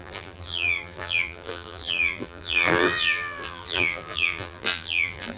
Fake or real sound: fake